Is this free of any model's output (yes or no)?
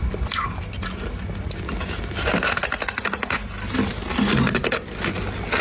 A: yes